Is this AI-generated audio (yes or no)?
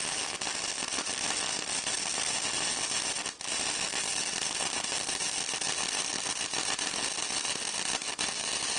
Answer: no